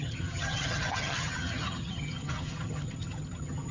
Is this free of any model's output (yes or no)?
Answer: no